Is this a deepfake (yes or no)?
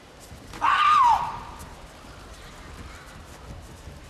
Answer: no